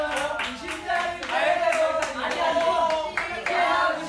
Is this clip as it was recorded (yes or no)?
yes